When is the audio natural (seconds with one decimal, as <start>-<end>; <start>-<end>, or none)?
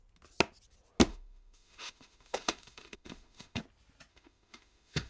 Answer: 0.0-1.1; 3.6-4.1